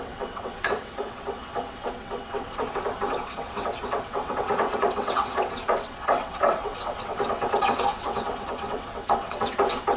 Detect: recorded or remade remade